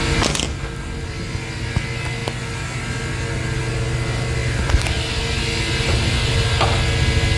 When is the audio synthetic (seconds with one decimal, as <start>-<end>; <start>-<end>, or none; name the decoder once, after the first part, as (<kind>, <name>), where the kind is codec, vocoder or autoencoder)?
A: 4.4-5.2 (vocoder, BigVGAN v2)